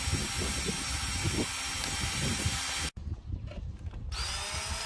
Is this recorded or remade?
recorded